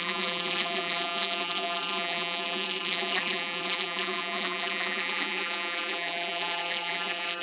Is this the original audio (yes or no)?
no